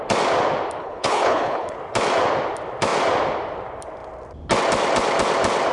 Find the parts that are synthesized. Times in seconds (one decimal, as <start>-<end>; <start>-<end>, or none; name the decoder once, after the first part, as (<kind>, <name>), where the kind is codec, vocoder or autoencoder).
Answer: 0.8-1.8 (codec, HILCodec)